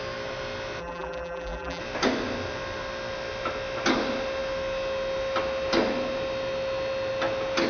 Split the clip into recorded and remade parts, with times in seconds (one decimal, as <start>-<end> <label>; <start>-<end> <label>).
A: 0.0-0.8 recorded; 0.8-1.8 remade; 1.8-7.7 recorded